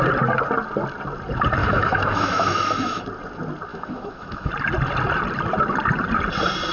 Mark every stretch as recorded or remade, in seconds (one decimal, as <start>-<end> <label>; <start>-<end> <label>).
0.0-1.6 recorded; 1.6-3.0 remade; 3.0-3.7 recorded; 3.7-4.5 remade; 4.5-6.7 recorded